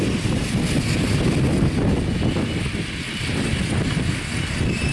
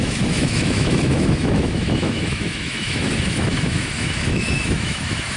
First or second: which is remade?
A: second